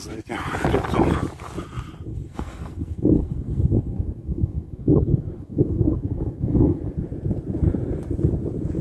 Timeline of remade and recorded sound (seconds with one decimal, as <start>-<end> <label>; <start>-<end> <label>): 0.0-2.1 recorded; 2.1-6.8 remade; 6.8-8.8 recorded